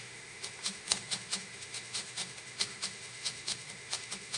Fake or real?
fake